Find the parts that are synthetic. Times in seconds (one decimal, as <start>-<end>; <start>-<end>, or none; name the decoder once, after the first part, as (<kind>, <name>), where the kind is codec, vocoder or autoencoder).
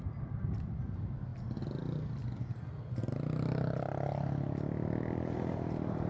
0.0-1.3 (vocoder, BigVGAN v2); 5.0-6.1